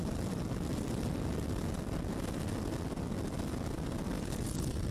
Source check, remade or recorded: recorded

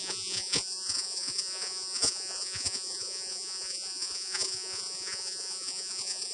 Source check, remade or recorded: remade